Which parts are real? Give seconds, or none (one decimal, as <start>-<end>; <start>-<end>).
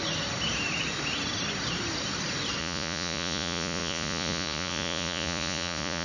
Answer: 0.0-2.6